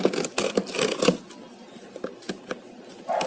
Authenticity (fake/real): real